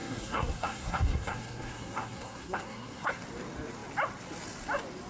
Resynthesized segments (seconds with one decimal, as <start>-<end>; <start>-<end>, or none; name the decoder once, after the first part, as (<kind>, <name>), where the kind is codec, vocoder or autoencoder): 0.0-3.1 (codec, SNAC)